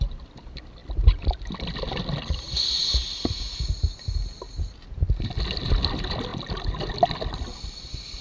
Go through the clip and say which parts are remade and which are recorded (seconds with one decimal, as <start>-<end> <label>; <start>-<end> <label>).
0.0-8.2 recorded